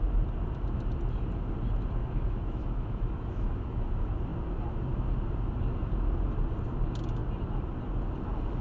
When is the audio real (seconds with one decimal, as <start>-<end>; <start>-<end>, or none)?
0.0-2.0; 3.8-8.6